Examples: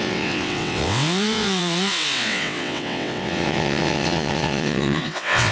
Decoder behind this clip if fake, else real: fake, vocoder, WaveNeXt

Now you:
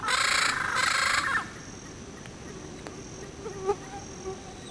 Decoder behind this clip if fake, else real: real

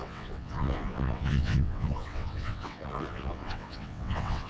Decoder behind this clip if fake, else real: fake, vocoder, WaveNeXt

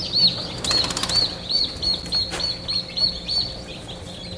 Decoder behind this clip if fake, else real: real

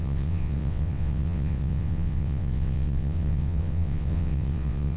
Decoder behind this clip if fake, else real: fake, vocoder, WaveNeXt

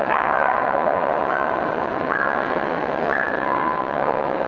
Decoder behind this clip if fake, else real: fake, vocoder, WaveNeXt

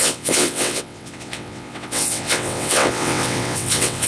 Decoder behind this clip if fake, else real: fake, vocoder, WaveNeXt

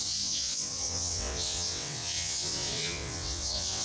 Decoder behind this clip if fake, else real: fake, vocoder, WaveNeXt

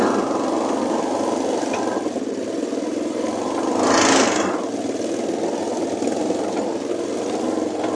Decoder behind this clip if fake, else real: real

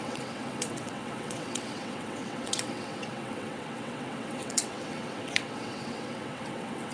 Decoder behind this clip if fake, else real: fake, vocoder, WaveNeXt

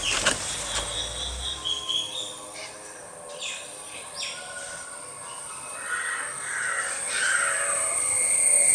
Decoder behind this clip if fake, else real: real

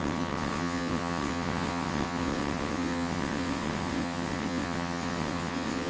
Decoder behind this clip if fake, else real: fake, vocoder, WaveNeXt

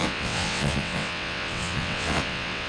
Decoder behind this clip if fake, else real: fake, vocoder, WaveNeXt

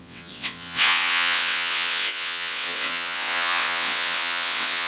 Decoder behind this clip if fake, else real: fake, vocoder, WaveNeXt